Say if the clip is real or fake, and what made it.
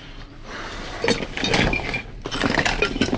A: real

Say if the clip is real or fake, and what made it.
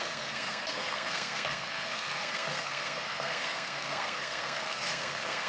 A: fake, codec, SNAC